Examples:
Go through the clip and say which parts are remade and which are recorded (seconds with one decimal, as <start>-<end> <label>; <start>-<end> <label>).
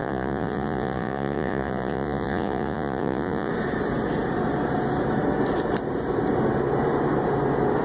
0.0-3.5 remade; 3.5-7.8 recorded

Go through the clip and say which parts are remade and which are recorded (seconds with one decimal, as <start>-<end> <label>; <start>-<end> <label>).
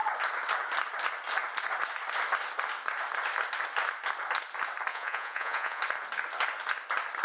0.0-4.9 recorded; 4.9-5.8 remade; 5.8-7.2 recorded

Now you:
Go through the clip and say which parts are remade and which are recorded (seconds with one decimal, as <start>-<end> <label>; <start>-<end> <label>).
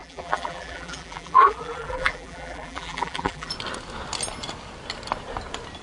0.0-3.5 remade; 3.5-5.8 recorded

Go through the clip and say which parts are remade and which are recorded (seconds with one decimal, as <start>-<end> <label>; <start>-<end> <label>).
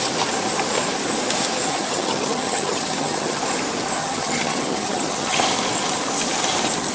0.0-1.7 recorded; 1.7-3.4 remade; 3.4-4.0 recorded; 4.0-5.4 remade; 5.4-6.9 recorded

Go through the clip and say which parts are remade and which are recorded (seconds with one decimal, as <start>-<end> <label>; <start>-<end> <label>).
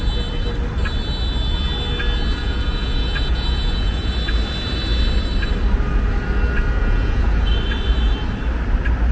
0.0-2.4 recorded; 2.4-4.1 remade; 4.1-6.8 recorded; 6.8-7.5 remade; 7.5-9.1 recorded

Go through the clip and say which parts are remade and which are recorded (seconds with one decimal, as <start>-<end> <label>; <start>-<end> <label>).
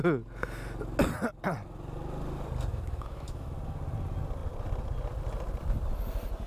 0.0-2.7 recorded; 2.7-3.5 remade; 3.5-6.5 recorded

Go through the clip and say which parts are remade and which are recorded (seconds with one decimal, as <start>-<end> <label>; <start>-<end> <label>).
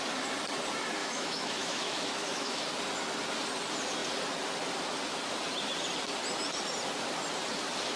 0.0-1.0 recorded; 1.0-2.6 remade; 2.6-8.0 recorded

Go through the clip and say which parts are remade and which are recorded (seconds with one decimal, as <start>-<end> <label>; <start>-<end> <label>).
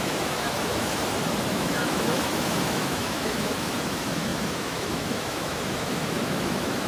0.0-1.0 remade; 1.0-1.5 recorded; 1.5-6.9 remade